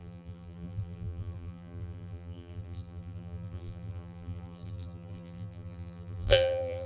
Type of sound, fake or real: fake